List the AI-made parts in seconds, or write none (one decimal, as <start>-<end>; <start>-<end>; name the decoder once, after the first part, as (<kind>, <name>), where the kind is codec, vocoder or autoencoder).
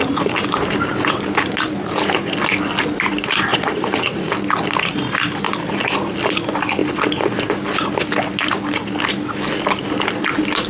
3.5-4.2 (vocoder, Vocos)